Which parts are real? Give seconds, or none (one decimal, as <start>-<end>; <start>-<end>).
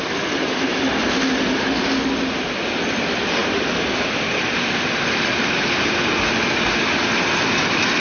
0.0-8.0